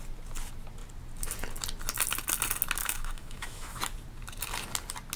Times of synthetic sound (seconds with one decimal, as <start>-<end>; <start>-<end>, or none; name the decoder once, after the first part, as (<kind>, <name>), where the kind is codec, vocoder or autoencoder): 2.8-3.8 (autoencoder, DAC-VAE)